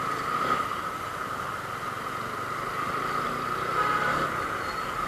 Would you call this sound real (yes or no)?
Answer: yes